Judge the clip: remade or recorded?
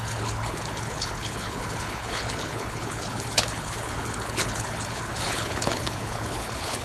remade